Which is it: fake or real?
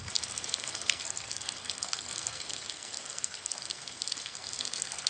fake